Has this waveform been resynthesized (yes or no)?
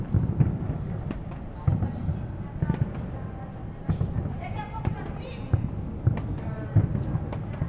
no